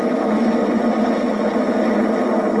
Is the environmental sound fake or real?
real